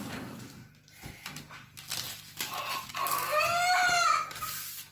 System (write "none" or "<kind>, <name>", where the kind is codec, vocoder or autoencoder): none